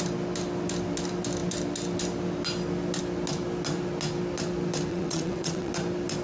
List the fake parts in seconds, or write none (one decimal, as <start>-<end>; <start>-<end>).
4.9-5.7